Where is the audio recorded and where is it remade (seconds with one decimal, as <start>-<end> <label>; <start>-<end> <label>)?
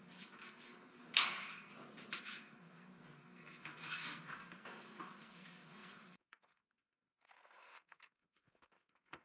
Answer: 0.0-1.7 remade; 1.7-2.2 recorded; 2.2-9.2 remade